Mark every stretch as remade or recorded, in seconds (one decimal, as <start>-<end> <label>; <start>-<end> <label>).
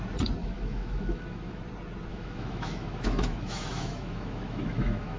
0.0-0.4 recorded; 0.4-1.6 remade; 1.6-2.1 recorded; 2.1-5.2 remade